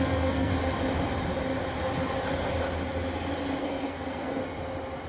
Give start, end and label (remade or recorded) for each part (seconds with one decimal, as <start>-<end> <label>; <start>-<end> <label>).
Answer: 0.0-0.5 remade; 0.5-3.6 recorded; 3.6-4.4 remade; 4.4-5.1 recorded